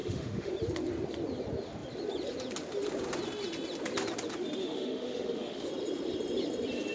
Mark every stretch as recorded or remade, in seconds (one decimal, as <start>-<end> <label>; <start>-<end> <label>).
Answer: 0.0-0.5 remade; 0.5-4.6 recorded; 4.6-5.7 remade; 5.7-6.9 recorded